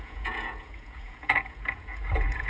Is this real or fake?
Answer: fake